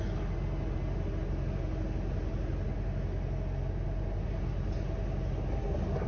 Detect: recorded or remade recorded